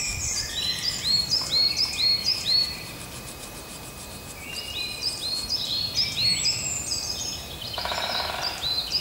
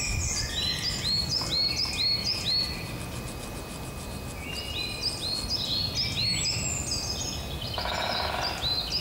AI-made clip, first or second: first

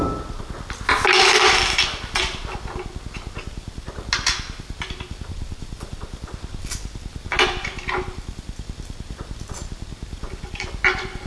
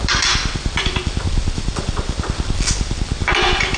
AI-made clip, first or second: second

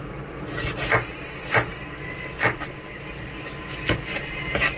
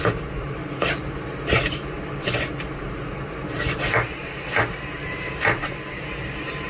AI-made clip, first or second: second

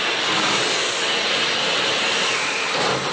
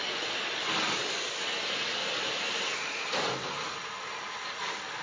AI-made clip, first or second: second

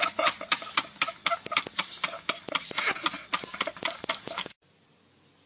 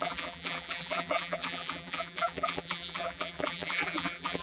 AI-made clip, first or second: second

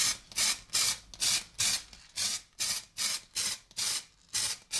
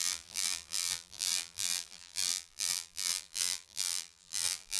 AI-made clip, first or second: second